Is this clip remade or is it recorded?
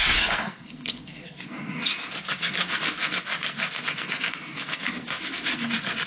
remade